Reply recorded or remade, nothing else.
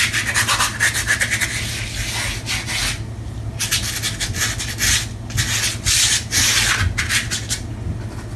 recorded